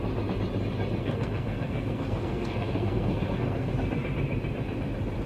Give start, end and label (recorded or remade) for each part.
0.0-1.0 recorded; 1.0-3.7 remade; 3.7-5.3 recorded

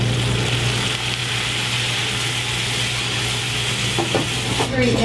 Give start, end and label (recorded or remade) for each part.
0.0-5.0 recorded

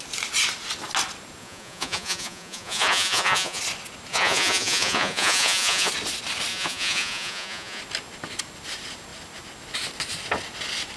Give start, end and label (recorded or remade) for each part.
0.0-1.4 recorded; 1.4-3.6 remade; 3.6-4.1 recorded; 4.1-5.9 remade; 5.9-6.5 recorded; 6.5-7.8 remade; 7.8-11.0 recorded

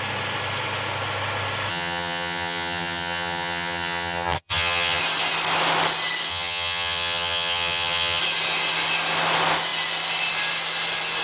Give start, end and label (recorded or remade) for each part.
0.0-1.7 recorded; 1.7-5.0 remade; 5.0-6.3 recorded; 6.3-8.2 remade; 8.2-11.2 recorded